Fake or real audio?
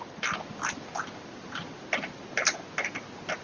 real